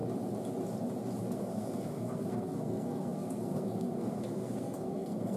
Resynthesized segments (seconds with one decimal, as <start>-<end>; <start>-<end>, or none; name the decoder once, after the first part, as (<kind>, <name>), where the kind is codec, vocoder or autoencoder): 1.2-5.4 (codec, SNAC)